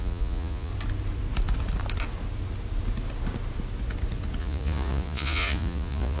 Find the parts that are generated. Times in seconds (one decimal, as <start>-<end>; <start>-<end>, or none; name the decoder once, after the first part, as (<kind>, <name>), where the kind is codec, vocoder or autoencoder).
0.0-0.7 (vocoder, Vocos); 4.4-6.2